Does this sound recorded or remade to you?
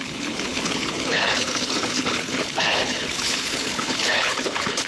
remade